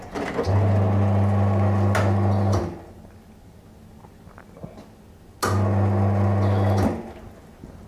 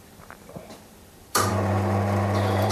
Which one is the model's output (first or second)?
second